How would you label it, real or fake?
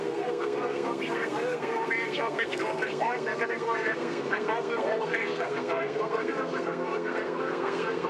fake